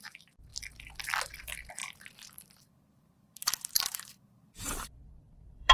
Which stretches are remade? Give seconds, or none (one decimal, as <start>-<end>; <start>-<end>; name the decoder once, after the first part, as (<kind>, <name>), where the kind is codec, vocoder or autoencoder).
0.0-0.5 (vocoder, BigVGAN v2); 1.4-5.7